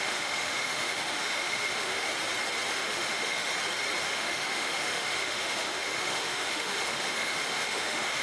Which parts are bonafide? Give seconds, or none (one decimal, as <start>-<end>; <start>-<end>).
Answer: 2.1-2.7; 3.5-4.0